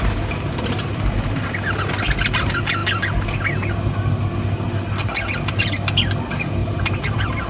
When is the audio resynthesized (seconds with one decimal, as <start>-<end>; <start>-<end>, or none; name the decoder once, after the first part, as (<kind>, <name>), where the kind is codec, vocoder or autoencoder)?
6.6-7.5 (vocoder, BigVGAN v2)